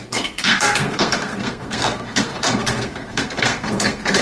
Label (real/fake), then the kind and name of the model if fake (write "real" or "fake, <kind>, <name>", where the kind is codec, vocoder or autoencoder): fake, codec, SNAC